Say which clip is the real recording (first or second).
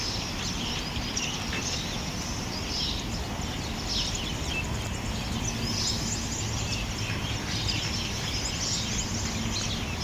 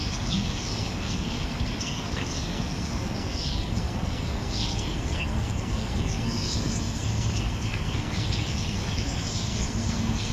first